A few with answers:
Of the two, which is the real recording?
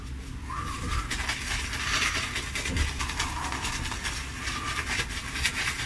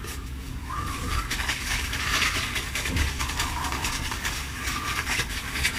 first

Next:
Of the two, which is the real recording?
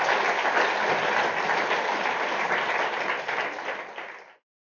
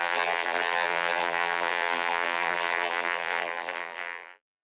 first